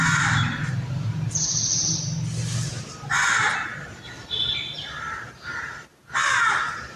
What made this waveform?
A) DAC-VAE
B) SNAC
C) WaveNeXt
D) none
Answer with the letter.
D